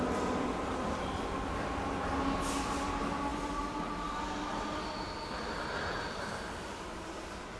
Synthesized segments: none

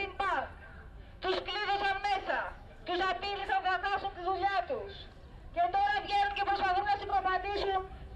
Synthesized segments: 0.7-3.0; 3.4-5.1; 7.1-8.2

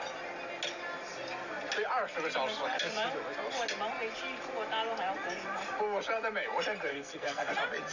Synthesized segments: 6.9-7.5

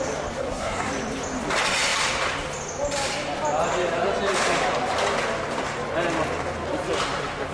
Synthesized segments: 0.4-0.9